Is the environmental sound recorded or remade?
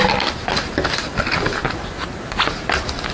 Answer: recorded